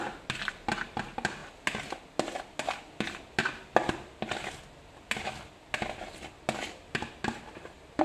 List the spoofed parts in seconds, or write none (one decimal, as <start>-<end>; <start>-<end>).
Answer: none